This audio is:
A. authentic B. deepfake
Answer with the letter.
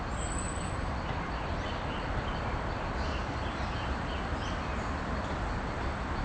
A